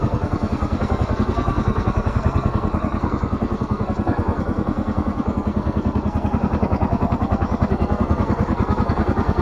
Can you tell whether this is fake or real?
fake